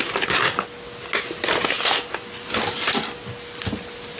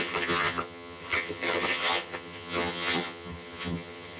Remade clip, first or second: second